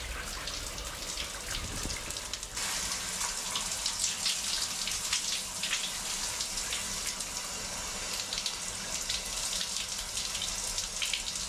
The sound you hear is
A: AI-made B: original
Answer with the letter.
B